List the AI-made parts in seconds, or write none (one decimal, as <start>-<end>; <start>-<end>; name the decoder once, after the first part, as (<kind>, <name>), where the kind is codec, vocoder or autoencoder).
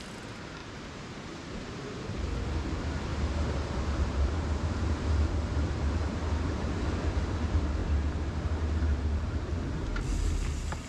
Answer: 0.6-1.8 (vocoder, BigVGAN v2); 3.1-5.3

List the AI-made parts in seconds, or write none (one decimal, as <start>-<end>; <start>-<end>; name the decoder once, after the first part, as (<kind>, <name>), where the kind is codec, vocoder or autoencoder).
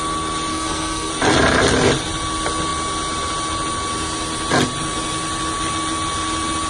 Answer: 0.5-1.1 (codec, SNAC)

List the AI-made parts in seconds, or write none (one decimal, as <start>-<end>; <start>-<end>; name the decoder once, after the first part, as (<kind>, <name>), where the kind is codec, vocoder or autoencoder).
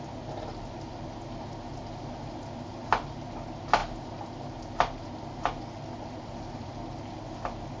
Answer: none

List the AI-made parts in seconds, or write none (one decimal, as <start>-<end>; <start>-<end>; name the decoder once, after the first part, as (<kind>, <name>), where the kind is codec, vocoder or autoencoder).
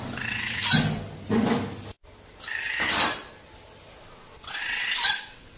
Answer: 0.0-0.6 (vocoder, WaveNeXt); 4.0-5.6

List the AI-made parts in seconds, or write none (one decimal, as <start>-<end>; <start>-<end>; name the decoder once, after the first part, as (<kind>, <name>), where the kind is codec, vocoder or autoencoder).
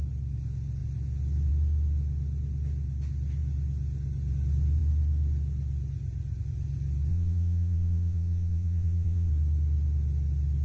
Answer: 7.1-9.3 (vocoder, Vocos)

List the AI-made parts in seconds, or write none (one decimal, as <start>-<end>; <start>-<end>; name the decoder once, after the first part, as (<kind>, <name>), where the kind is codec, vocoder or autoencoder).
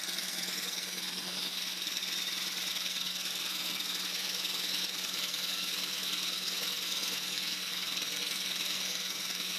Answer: 0.0-2.0 (codec, SNAC); 2.7-9.6